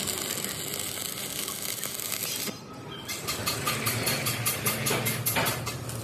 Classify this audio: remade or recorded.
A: recorded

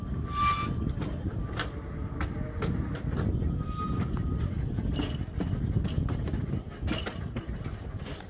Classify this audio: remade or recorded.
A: recorded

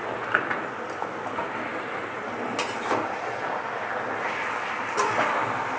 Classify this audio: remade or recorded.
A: recorded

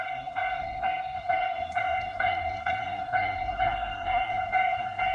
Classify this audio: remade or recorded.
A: remade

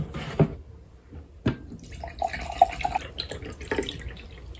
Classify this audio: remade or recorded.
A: recorded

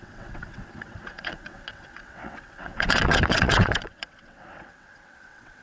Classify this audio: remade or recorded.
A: remade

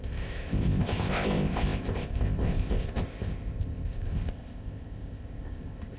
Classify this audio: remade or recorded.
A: remade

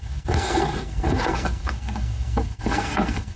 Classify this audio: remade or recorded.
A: remade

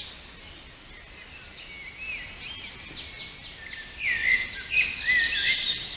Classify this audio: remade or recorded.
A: recorded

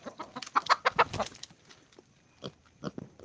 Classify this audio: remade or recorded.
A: recorded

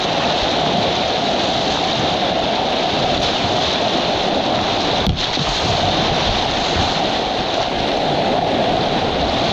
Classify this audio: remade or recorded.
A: recorded